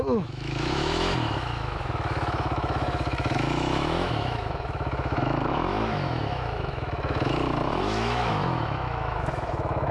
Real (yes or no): no